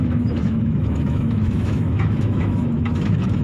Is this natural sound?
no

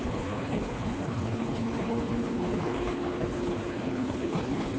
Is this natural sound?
no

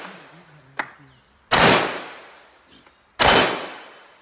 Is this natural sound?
yes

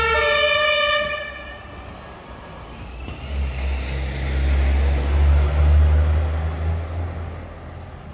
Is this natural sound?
yes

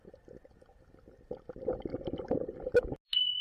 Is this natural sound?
yes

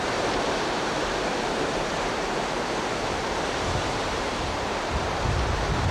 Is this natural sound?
no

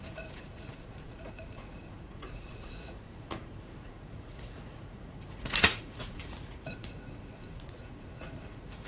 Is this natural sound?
no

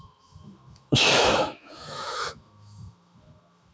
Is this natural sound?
no